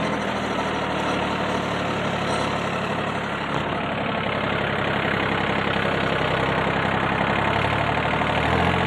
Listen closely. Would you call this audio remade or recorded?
recorded